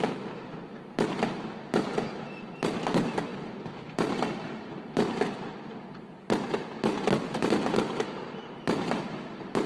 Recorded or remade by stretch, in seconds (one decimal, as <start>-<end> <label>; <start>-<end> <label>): 0.0-9.7 recorded